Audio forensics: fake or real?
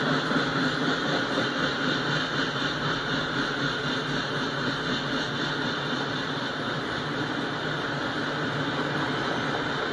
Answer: real